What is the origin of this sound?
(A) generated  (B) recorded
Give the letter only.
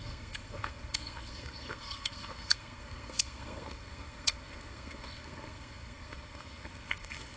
A